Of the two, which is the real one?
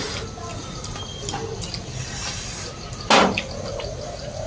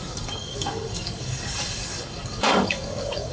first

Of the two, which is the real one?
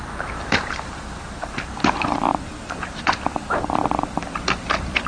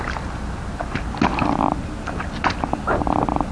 second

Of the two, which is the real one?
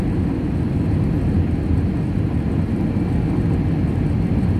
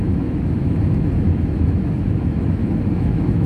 first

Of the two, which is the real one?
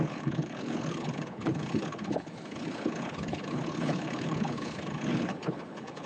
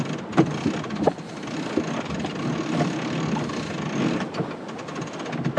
second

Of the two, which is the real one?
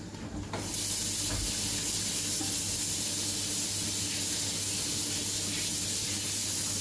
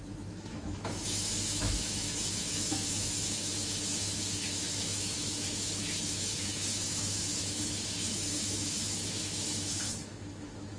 first